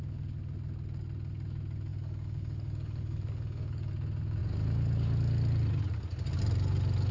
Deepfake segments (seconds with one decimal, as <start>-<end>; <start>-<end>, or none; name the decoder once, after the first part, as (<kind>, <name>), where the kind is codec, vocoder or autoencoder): 1.9-3.9 (codec, DAC)